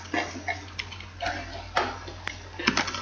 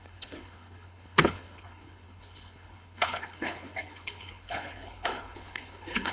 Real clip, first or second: first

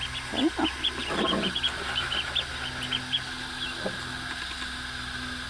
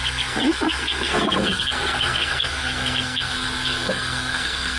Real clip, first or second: first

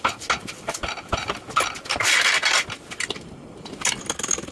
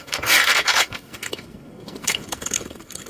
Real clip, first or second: first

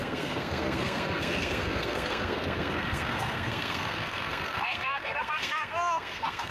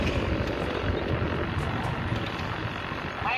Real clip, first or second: second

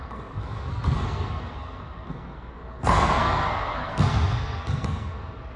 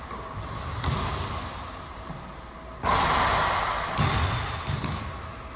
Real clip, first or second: second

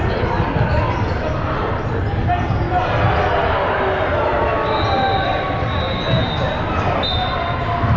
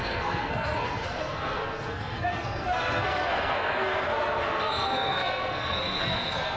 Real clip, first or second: first